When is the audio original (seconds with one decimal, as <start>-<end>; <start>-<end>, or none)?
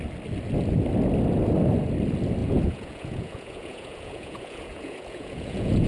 0.0-2.4